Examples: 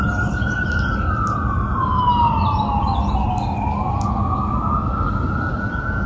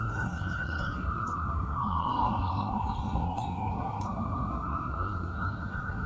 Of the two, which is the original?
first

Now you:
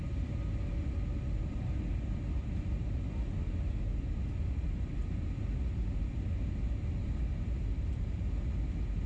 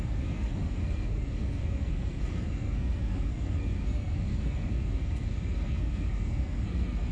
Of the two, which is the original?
first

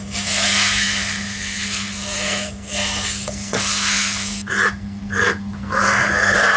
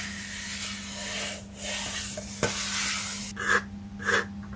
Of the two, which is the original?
second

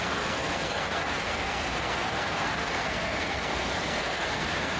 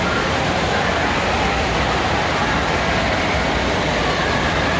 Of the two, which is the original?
second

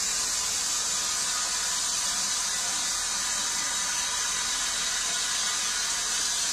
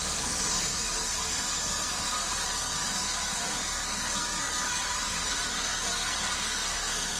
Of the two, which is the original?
first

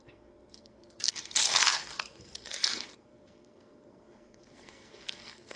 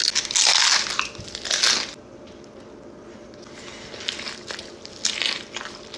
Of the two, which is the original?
second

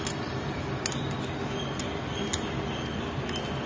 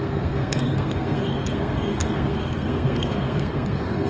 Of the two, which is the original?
first